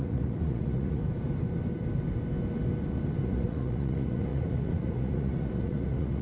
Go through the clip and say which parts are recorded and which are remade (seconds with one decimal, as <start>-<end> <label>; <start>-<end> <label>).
0.0-1.0 remade; 1.0-3.2 recorded; 3.2-6.2 remade